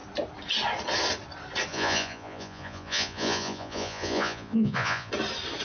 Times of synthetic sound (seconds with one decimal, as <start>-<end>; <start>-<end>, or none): 1.7-5.1